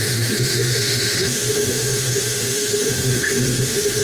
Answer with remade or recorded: remade